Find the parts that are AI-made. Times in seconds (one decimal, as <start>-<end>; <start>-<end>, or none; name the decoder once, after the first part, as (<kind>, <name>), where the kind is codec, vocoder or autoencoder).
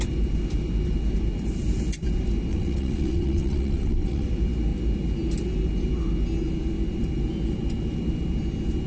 2.5-4.3 (vocoder, WaveNeXt)